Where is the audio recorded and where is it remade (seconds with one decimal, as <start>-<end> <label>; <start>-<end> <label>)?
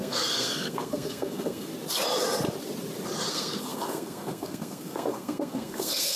0.0-1.7 remade; 1.7-3.3 recorded; 3.3-6.2 remade